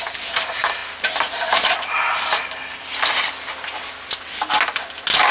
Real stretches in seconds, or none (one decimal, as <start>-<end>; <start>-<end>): 0.0-5.3